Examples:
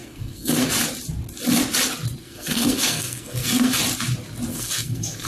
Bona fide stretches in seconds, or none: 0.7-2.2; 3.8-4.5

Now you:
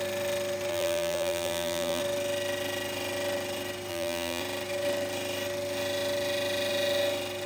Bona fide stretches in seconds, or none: 0.0-0.7; 2.0-3.9; 4.4-7.5

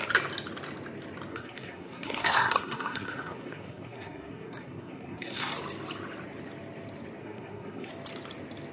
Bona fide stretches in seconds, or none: 0.0-1.3; 5.5-7.2; 7.9-8.7

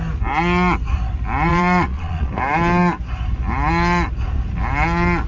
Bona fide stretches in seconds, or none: 0.0-1.5; 2.3-5.3

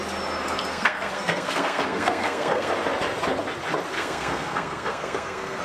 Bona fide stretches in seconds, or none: 0.0-0.7; 2.7-3.9